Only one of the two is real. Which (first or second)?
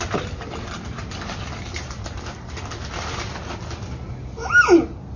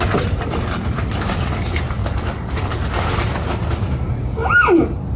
first